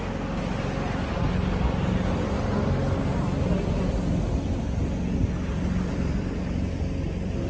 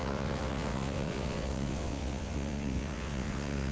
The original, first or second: first